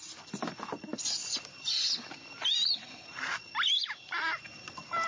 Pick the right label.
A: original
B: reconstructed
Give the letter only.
A